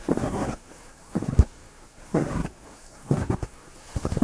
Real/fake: fake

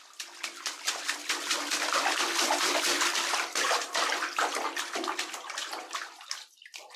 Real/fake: fake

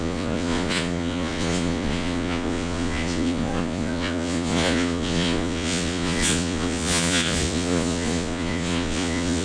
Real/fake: fake